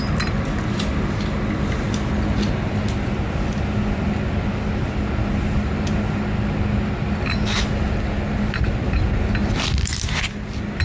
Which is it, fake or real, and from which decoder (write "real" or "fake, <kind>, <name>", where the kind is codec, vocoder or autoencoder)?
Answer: real